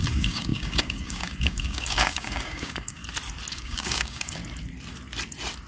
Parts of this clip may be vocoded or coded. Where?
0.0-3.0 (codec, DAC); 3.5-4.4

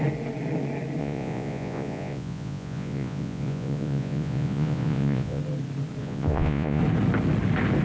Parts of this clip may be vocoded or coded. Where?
1.0-5.4 (vocoder, Vocos); 6.0-6.8

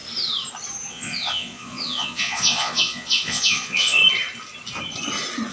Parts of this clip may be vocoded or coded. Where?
0.9-4.0 (vocoder, Vocos)

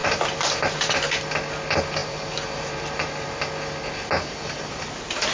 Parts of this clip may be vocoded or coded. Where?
0.0-0.9 (vocoder, BigVGAN v2); 2.0-3.4